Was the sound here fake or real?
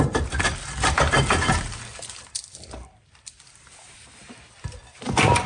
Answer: fake